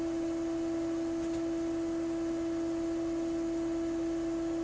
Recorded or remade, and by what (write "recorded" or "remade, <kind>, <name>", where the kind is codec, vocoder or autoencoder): recorded